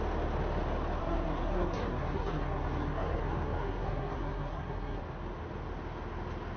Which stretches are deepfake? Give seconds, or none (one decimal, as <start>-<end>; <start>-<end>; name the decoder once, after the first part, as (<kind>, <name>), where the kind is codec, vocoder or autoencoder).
1.0-5.0 (codec, SNAC)